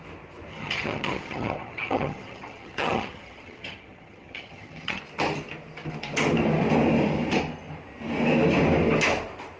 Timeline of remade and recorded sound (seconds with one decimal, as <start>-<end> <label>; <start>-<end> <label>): 0.0-0.5 recorded; 0.5-5.0 remade; 5.0-9.6 recorded